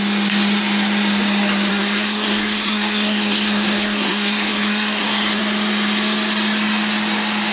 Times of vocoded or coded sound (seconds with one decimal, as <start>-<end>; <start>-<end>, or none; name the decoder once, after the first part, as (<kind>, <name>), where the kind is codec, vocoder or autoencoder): 1.7-5.4 (codec, SNAC)